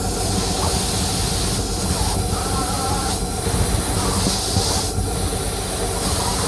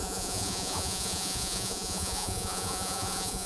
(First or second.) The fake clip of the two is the second